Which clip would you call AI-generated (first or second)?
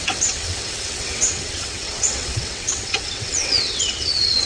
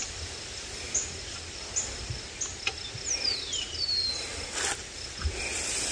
first